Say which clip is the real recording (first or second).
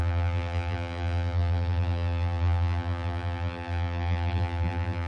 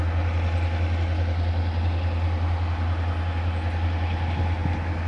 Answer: second